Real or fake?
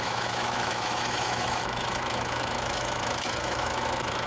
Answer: fake